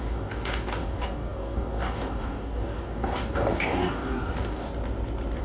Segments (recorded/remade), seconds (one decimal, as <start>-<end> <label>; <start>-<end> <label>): 0.0-4.7 remade; 4.7-5.4 recorded